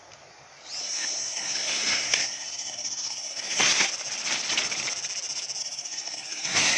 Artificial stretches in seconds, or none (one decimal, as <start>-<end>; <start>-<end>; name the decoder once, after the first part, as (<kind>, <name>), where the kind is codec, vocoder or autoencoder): 0.8-3.9 (codec, SNAC); 5.6-6.8